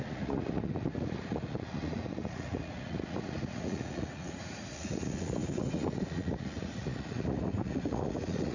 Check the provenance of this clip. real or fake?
fake